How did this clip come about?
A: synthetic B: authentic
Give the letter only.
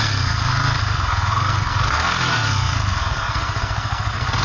A